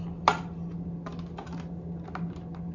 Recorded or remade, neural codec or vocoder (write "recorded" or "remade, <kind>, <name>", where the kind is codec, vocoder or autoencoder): recorded